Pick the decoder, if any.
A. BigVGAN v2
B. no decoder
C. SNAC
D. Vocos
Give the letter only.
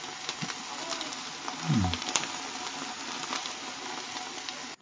B